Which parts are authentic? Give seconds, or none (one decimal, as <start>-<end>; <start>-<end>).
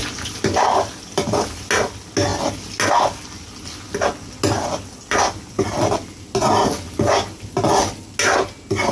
0.0-8.9